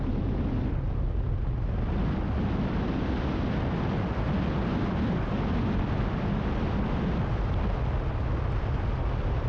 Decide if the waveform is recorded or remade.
recorded